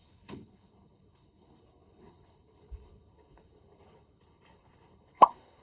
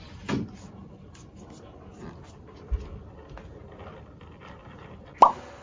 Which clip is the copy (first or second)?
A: first